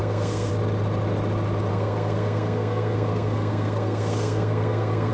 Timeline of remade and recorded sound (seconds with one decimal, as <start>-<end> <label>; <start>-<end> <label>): 0.0-0.5 remade; 0.5-1.7 recorded; 1.7-5.1 remade